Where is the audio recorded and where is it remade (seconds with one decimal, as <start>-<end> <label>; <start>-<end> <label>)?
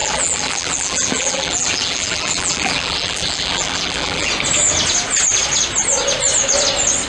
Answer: 0.0-4.3 remade; 4.3-7.1 recorded